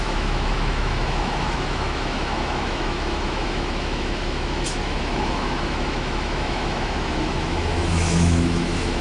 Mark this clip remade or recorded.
remade